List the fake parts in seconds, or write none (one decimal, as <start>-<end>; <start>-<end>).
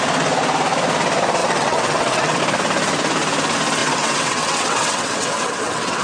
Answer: 1.4-2.4; 3.8-6.0